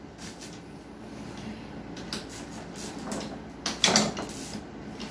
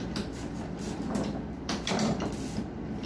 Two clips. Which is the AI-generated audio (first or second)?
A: second